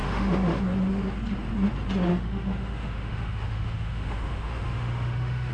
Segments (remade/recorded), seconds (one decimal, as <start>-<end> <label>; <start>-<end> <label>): 0.0-0.6 remade; 0.6-2.1 recorded; 2.1-5.5 remade